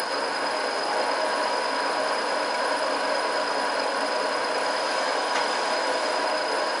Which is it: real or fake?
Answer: real